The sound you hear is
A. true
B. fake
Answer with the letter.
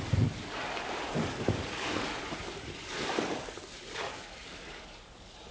B